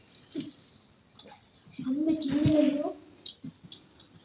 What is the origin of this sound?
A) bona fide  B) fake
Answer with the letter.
A